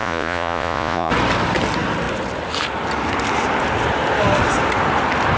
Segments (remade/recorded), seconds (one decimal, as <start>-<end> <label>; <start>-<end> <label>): 0.0-1.1 remade; 1.1-5.4 recorded